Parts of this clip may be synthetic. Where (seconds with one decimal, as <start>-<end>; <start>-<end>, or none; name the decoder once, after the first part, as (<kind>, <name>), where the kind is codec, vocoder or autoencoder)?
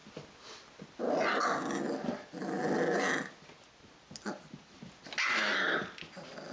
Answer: none